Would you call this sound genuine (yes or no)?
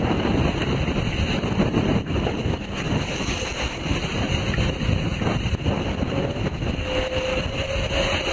yes